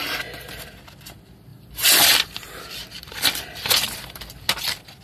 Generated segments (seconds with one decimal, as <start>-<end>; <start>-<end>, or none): 1.5-4.5